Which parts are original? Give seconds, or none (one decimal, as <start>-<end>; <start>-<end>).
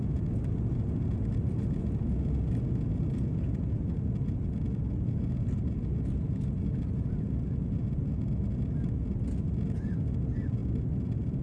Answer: 0.0-11.4